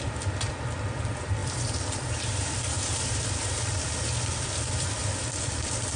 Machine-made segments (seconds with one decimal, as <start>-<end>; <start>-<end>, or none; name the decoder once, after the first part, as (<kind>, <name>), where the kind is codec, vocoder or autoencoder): 0.0-6.0 (vocoder, BigVGAN v2)